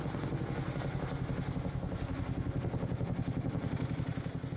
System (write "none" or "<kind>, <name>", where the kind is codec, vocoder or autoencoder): none